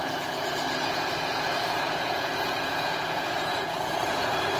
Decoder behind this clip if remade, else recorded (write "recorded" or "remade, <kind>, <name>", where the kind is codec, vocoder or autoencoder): remade, vocoder, Vocos